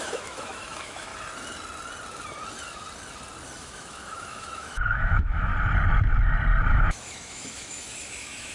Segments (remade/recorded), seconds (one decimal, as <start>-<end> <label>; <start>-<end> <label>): 0.0-1.1 remade; 1.1-3.6 recorded; 3.6-5.5 remade; 5.5-6.7 recorded; 6.7-8.5 remade